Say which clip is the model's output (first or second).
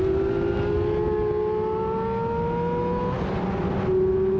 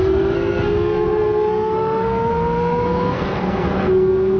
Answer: second